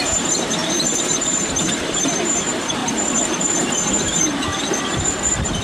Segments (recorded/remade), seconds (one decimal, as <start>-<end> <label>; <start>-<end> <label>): 0.0-2.8 remade; 2.8-4.0 recorded; 4.0-5.6 remade